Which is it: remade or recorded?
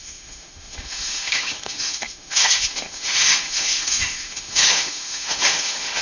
remade